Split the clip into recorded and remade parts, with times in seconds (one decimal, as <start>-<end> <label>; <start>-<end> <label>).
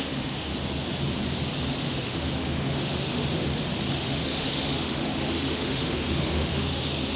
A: 0.0-0.5 remade; 0.5-1.8 recorded; 1.8-3.2 remade; 3.2-3.9 recorded; 3.9-7.2 remade